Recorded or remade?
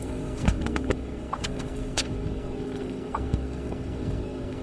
remade